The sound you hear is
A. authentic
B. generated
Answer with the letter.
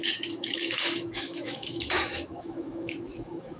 B